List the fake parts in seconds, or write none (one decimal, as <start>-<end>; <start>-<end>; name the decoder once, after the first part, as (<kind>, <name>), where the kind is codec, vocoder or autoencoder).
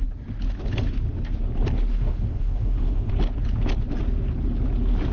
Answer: 1.9-3.1 (autoencoder, DAC-VAE)